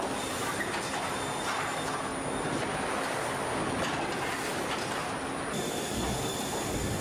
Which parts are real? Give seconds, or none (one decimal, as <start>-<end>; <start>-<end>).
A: 0.0-7.0